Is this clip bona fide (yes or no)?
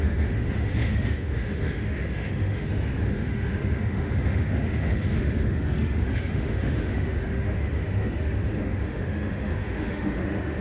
no